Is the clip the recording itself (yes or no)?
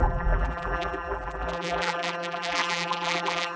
no